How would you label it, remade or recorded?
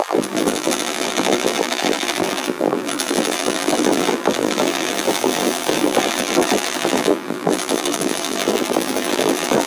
remade